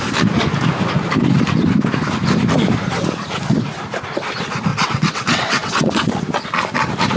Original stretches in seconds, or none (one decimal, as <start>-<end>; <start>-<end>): 0.0-4.7; 6.1-7.2